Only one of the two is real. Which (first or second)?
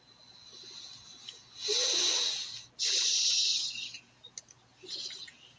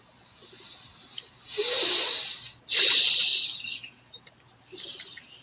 first